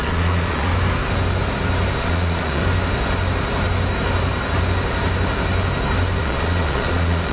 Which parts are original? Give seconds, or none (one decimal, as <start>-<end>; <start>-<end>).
0.7-2.0; 2.6-6.2